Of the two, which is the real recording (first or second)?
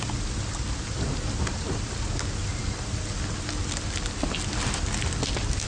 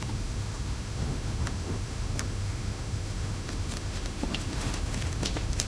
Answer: first